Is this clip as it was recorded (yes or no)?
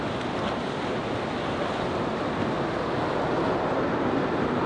yes